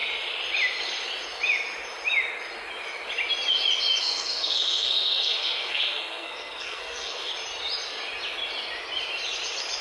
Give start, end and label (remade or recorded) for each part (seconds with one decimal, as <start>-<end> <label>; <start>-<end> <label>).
0.0-4.0 recorded; 4.0-7.3 remade; 7.3-9.8 recorded